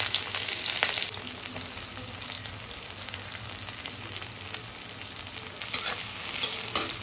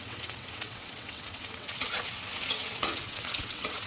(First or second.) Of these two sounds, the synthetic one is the second